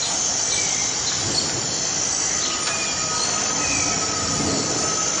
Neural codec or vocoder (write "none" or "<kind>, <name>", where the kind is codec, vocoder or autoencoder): none